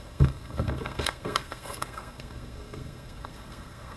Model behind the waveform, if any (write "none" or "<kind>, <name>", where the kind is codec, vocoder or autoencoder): codec, SNAC